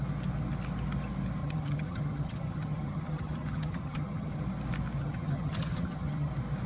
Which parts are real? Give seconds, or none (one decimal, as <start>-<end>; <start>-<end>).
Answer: 0.0-1.4; 4.4-5.0; 6.3-6.7